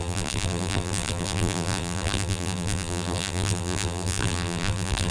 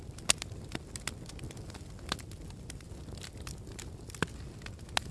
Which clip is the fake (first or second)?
first